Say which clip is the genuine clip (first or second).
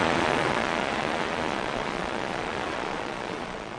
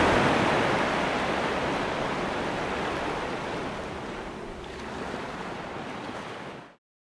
second